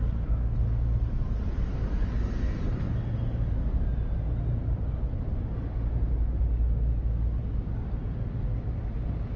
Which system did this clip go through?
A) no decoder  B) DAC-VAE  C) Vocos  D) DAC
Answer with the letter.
A